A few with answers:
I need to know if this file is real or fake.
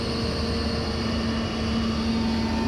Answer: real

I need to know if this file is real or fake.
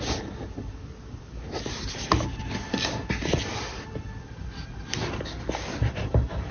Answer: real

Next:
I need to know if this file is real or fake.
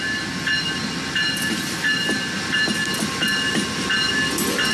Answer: real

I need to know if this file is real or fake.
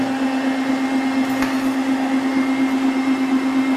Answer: real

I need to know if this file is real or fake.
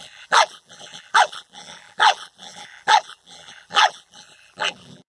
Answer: fake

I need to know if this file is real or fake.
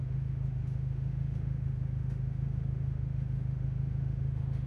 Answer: fake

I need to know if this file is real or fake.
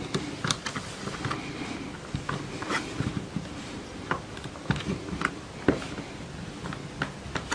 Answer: real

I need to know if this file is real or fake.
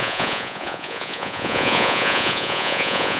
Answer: fake